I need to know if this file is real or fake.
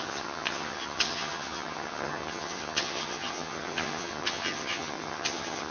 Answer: fake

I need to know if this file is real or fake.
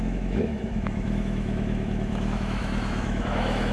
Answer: fake